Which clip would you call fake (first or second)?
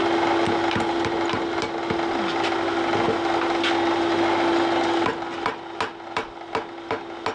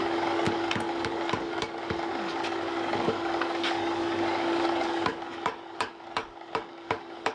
second